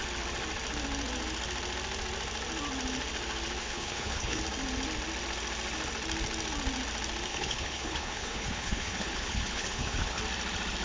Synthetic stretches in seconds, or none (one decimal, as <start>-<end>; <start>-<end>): 3.6-4.4; 7.3-10.2